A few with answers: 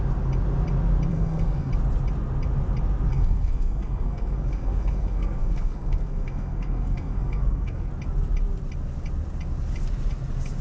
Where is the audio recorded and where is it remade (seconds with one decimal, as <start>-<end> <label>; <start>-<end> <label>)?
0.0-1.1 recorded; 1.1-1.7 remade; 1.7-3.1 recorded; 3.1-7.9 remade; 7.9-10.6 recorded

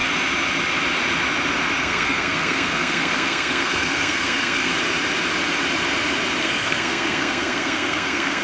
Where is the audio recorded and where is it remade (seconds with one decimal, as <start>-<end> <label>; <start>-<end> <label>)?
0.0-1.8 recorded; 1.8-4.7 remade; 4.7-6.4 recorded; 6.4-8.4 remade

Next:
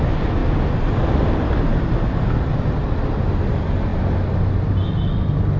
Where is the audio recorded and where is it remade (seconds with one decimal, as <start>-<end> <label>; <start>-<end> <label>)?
0.0-5.6 recorded

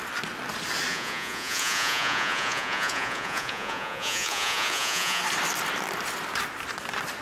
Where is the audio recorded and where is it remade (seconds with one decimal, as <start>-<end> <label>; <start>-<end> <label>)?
0.0-0.9 recorded; 0.9-5.2 remade; 5.2-7.2 recorded

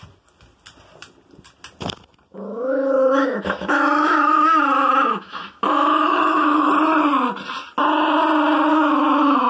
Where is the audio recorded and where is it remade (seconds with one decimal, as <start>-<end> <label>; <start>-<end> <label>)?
0.0-2.3 recorded; 2.3-6.7 remade; 6.7-8.7 recorded; 8.7-9.5 remade